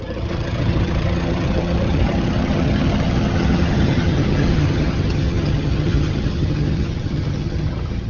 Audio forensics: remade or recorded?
remade